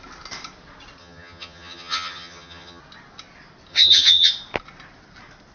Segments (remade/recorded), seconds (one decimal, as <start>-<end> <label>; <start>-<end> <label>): 0.0-1.0 recorded; 1.0-2.8 remade; 2.8-3.7 recorded; 3.7-4.3 remade; 4.3-5.5 recorded